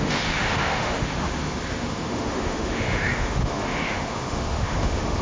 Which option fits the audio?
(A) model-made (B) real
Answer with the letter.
A